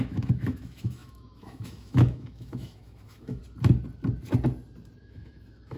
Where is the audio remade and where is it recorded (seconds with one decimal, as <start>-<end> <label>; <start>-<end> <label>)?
0.0-3.4 remade; 3.4-5.0 recorded; 5.0-5.8 remade